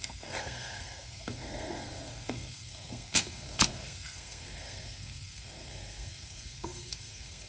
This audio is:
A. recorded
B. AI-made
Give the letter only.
B